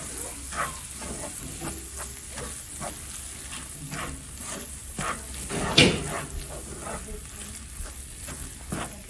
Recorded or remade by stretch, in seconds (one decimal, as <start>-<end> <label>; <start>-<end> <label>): 0.0-9.1 recorded